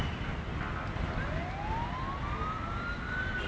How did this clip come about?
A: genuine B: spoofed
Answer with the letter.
A